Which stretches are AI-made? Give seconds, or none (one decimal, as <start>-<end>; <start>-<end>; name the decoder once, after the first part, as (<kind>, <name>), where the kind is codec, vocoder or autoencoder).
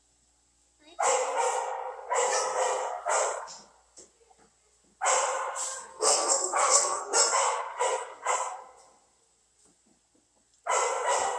5.9-7.0 (codec, SNAC)